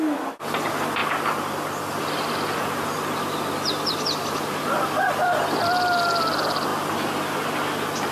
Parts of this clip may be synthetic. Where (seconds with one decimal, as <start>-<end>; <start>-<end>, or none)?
none